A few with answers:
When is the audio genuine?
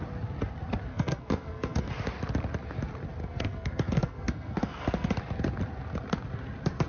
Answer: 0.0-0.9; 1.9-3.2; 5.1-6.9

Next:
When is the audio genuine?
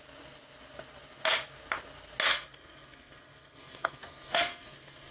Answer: 0.0-2.3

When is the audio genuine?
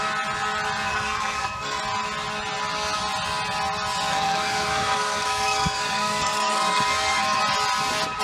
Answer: 0.0-0.9; 1.8-4.1; 7.4-8.2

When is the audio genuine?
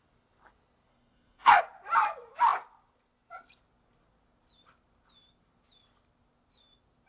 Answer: 0.0-0.9; 1.6-7.1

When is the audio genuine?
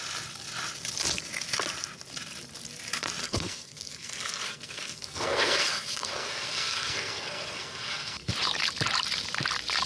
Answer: 0.0-3.2; 8.3-9.9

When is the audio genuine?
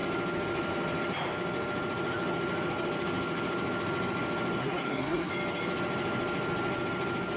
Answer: 0.0-4.6; 5.3-7.4